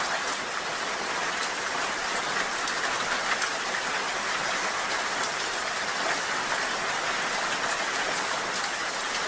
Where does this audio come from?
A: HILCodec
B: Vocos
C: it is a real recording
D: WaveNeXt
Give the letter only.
C